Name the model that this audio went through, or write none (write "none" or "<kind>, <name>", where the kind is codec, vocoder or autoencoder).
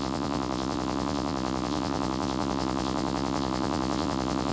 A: vocoder, Vocos